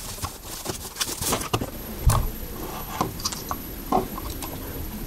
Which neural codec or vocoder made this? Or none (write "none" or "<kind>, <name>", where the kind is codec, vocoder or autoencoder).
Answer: vocoder, BigVGAN v2